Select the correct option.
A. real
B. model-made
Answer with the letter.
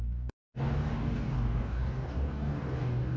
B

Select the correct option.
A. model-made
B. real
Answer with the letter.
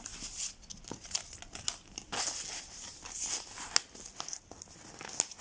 B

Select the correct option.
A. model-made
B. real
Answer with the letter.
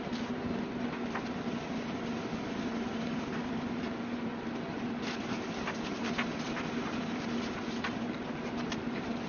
B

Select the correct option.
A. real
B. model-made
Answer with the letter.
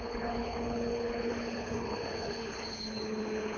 B